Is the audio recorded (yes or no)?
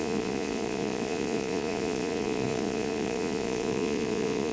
no